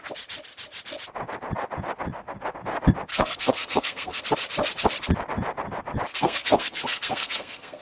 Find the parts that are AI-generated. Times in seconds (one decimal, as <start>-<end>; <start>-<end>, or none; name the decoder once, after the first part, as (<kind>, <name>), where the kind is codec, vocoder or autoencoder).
3.1-4.2 (codec, SNAC); 6.1-7.8